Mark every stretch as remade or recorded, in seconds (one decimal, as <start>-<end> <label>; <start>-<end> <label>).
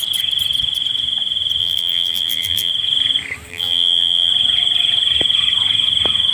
0.0-1.6 recorded; 1.6-2.7 remade; 2.7-3.5 recorded; 3.5-4.3 remade; 4.3-6.3 recorded